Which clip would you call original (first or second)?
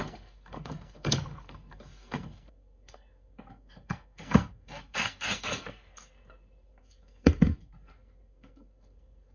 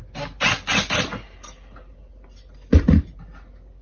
second